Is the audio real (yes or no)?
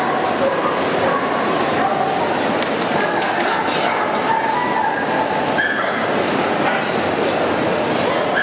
yes